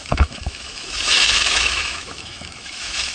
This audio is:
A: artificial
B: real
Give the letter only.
A